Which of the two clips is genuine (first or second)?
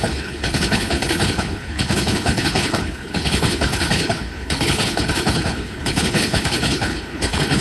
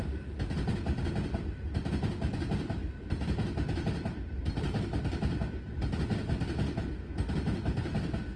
second